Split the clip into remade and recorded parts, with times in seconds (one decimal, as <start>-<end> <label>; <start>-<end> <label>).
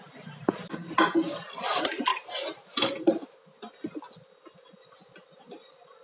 0.0-6.0 recorded